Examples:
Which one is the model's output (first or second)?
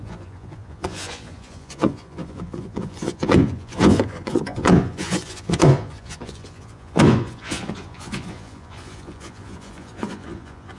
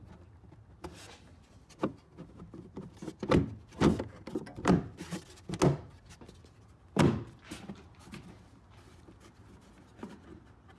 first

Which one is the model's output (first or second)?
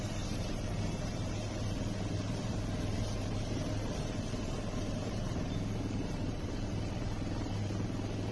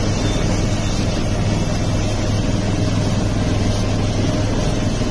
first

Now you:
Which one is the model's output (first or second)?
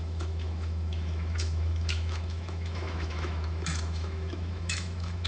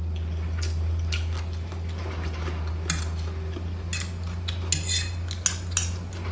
first